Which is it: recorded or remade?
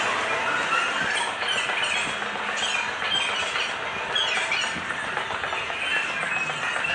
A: recorded